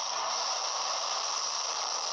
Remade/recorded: recorded